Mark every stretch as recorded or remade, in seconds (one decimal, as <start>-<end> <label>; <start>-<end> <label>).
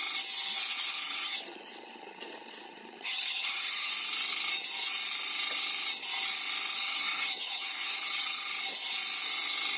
0.0-0.7 recorded; 0.7-3.9 remade; 3.9-6.7 recorded; 6.7-8.5 remade; 8.5-9.8 recorded